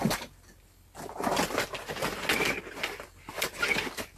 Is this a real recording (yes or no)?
yes